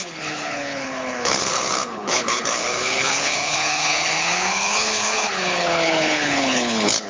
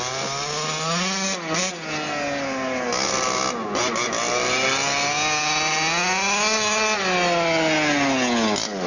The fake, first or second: first